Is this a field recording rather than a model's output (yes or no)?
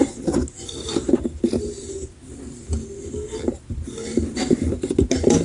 yes